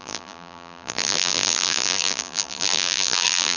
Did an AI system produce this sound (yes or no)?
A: yes